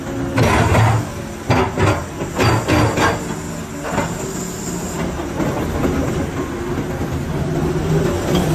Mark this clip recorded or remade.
recorded